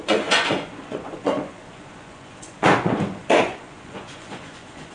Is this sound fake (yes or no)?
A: yes